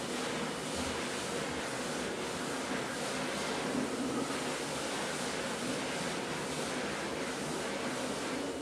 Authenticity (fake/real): real